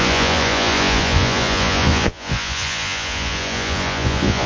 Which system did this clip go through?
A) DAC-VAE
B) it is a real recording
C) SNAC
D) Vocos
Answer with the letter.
D